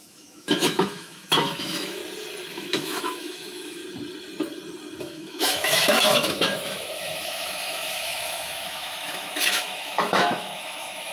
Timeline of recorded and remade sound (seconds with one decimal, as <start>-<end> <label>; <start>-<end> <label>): 0.0-2.0 remade; 2.0-2.5 recorded; 2.5-3.8 remade; 3.8-5.0 recorded; 5.0-11.1 remade